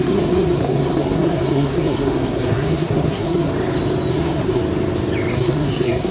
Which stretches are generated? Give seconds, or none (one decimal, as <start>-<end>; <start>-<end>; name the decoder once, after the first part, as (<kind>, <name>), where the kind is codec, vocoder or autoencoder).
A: 0.0-3.5 (codec, SNAC); 4.1-4.6; 5.3-6.1